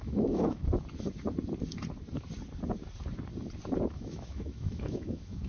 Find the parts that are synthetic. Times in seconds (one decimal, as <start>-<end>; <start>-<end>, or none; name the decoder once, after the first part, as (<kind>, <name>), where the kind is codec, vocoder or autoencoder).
0.0-0.6 (autoencoder, DAC-VAE); 3.9-5.5